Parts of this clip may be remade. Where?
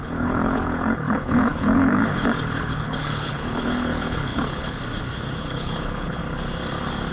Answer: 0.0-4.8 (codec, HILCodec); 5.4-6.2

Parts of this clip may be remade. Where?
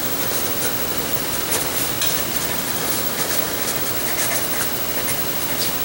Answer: 0.9-3.8 (vocoder, BigVGAN v2)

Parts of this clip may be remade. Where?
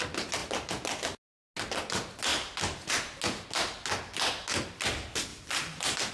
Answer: 2.3-2.9 (vocoder, BigVGAN v2); 5.3-6.1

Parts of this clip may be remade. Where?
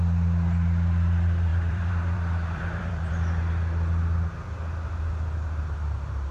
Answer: 1.5-3.1 (vocoder, BigVGAN v2)